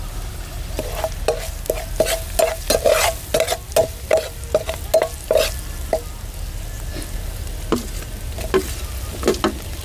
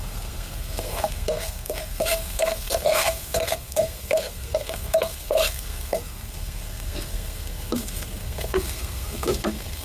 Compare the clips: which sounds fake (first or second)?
second